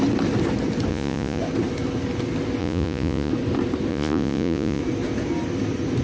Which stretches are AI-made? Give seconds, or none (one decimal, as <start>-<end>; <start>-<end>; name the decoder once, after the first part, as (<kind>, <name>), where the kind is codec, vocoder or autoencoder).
0.9-1.4 (vocoder, Vocos); 2.6-3.3; 3.9-4.8